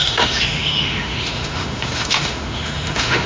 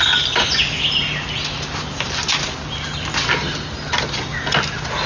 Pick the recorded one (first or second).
second